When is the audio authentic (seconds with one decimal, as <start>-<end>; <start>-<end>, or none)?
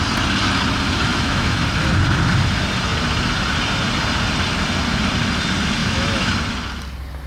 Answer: 0.0-1.1; 1.6-5.8; 6.3-7.3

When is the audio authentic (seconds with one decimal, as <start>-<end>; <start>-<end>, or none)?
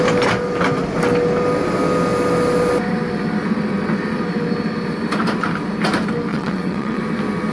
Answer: 0.0-6.3; 7.0-7.5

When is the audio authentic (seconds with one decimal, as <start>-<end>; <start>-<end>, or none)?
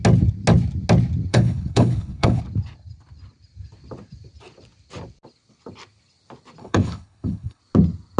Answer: 0.0-1.3; 2.4-6.6; 7.6-8.2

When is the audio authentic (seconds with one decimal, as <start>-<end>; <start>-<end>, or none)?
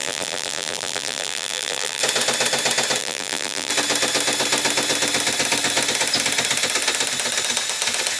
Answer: 2.0-3.0; 3.7-8.2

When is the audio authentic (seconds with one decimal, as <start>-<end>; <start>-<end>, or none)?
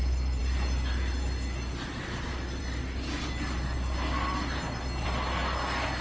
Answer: 0.0-6.0